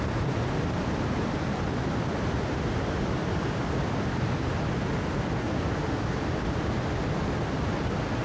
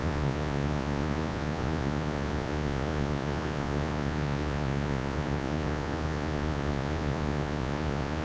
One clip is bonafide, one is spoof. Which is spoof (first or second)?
second